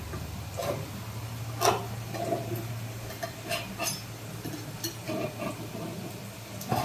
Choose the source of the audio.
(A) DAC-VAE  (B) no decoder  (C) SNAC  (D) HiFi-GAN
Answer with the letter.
B